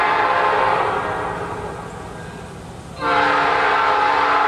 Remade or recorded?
recorded